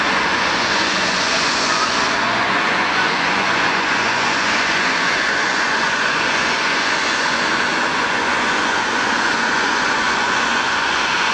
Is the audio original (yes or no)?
no